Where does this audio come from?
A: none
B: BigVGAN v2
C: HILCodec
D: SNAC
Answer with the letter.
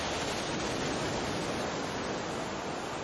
A